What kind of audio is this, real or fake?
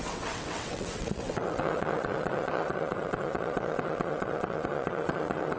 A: fake